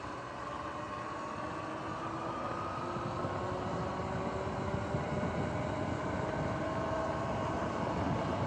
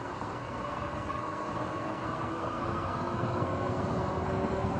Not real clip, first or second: second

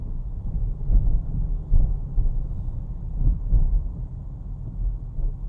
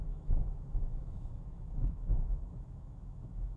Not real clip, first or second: second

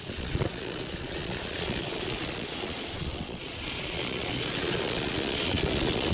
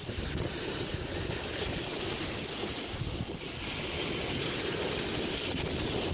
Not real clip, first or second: first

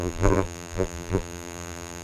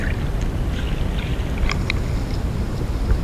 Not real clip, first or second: first